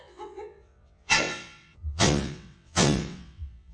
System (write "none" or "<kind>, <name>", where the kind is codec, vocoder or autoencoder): vocoder, WaveNeXt